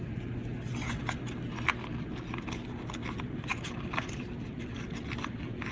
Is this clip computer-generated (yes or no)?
no